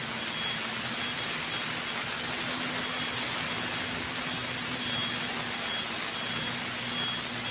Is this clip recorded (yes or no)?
yes